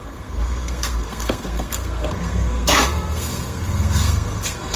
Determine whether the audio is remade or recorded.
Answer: remade